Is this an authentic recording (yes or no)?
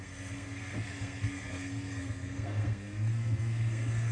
no